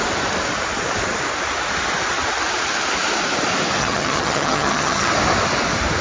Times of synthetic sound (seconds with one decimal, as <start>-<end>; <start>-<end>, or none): 3.8-5.1